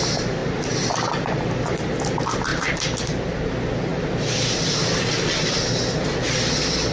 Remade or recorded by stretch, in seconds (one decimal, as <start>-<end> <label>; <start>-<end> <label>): 0.0-6.9 recorded